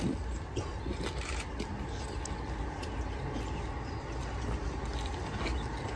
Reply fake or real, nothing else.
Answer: real